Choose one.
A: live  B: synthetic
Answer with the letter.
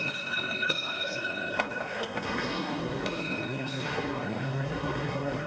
B